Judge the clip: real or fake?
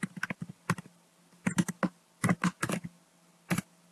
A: real